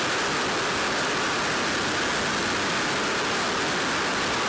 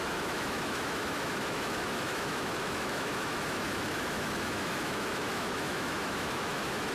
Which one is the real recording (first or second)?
first